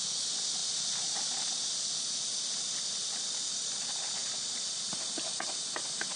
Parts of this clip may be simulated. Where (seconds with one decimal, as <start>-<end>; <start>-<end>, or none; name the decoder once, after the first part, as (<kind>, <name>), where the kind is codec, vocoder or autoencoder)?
none